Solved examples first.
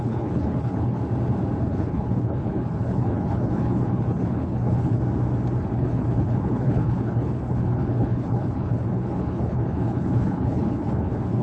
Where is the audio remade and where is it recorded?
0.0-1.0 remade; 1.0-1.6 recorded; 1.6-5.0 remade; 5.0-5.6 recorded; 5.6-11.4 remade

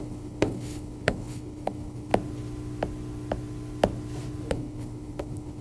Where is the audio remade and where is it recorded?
0.0-2.1 remade; 2.1-4.5 recorded; 4.5-5.6 remade

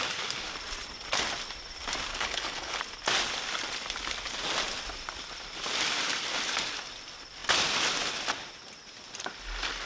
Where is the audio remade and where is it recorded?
0.0-2.1 recorded; 2.1-2.8 remade; 2.8-9.9 recorded

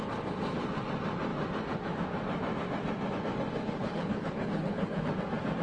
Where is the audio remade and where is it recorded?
0.0-3.8 recorded; 3.8-5.1 remade; 5.1-5.6 recorded

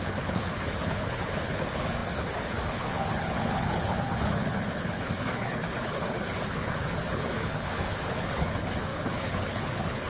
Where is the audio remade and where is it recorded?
0.0-10.1 remade

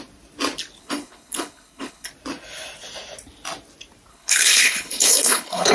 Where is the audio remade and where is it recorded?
0.0-0.8 recorded; 0.8-2.1 remade; 2.1-4.1 recorded; 4.1-5.7 remade

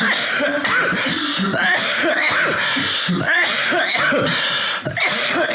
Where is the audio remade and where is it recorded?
0.0-5.5 recorded

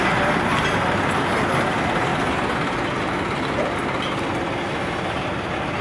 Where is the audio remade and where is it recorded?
0.0-5.8 recorded